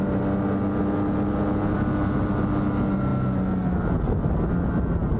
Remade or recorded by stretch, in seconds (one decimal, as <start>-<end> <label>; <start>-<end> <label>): 0.0-5.2 recorded

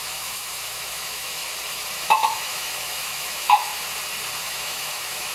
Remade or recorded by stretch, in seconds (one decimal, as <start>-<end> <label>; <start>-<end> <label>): 0.0-1.4 remade; 1.4-2.0 recorded; 2.0-3.7 remade; 3.7-4.4 recorded; 4.4-5.3 remade

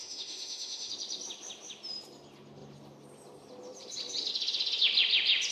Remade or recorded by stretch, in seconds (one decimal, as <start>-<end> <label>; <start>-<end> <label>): 0.0-0.9 remade; 0.9-5.5 recorded